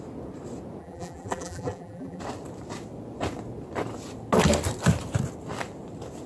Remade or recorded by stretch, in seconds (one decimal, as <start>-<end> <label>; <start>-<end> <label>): 0.0-0.8 recorded; 0.8-2.2 remade; 2.2-6.3 recorded

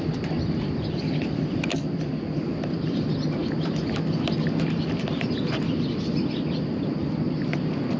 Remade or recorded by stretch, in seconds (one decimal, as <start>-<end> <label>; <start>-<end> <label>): 0.0-8.0 recorded